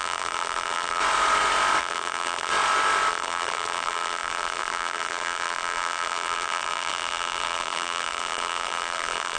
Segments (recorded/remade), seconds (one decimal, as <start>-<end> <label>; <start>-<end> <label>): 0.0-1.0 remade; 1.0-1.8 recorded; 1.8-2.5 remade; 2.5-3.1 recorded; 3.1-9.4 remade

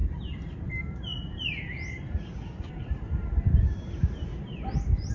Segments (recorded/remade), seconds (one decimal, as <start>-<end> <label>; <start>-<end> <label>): 0.0-2.7 recorded; 2.7-5.1 remade

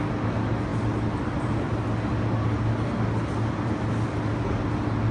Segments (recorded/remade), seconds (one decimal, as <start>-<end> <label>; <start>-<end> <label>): 0.0-5.1 recorded